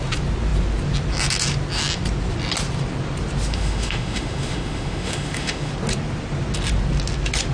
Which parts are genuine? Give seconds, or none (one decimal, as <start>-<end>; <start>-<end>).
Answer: 0.0-3.5; 5.7-7.5